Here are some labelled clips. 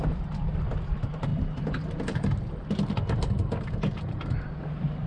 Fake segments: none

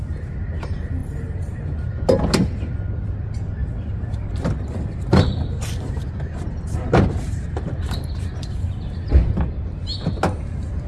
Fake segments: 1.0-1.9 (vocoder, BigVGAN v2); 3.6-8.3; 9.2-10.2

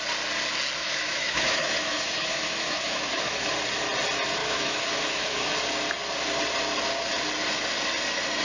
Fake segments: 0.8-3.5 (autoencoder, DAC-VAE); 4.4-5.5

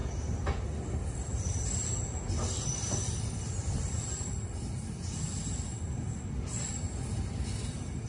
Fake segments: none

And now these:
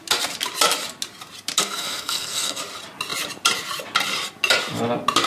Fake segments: 1.6-2.6 (codec, SNAC)